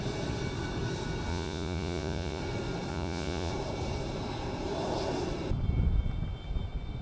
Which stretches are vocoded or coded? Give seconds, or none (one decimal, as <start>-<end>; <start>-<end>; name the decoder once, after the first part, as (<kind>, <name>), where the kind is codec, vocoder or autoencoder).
1.3-2.4 (vocoder, Vocos); 2.9-3.5